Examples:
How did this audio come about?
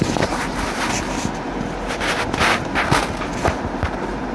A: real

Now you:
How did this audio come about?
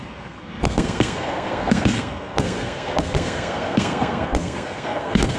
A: fake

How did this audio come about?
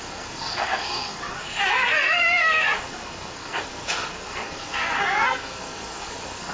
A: fake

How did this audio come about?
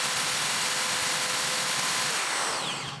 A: real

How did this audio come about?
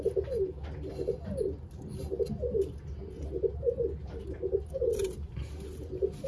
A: real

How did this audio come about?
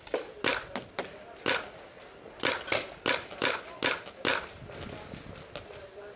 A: real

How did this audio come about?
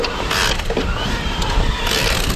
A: real